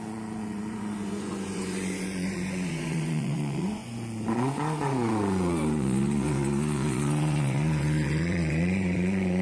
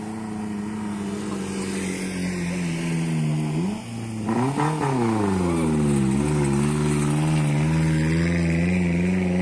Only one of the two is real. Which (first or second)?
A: second